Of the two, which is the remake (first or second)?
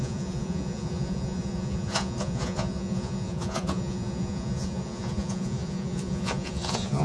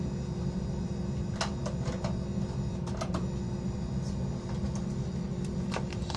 first